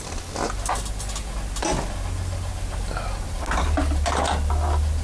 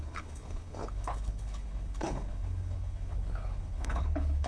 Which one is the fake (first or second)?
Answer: second